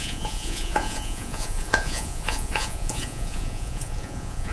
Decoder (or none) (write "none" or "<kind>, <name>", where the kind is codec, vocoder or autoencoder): vocoder, Vocos